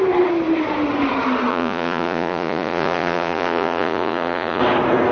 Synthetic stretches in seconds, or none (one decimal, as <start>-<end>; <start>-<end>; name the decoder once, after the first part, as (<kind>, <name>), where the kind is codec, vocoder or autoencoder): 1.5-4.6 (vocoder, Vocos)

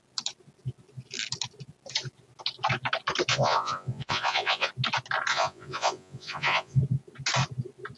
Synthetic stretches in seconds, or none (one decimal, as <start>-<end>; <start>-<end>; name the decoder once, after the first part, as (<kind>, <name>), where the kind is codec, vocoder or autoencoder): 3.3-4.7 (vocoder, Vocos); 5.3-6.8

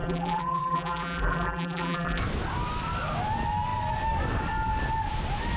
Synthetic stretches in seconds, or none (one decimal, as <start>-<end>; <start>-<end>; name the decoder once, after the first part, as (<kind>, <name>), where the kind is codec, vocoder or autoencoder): 0.0-2.2 (vocoder, BigVGAN v2)

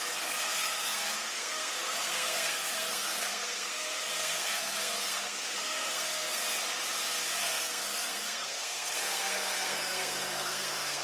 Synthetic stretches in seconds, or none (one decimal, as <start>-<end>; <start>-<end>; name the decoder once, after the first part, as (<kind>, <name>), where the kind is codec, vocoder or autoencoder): 0.0-6.4 (codec, SNAC); 7.4-11.0

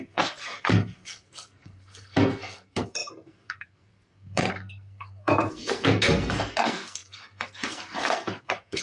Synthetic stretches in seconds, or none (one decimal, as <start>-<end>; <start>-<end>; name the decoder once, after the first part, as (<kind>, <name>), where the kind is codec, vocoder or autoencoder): 0.0-8.8 (codec, SNAC)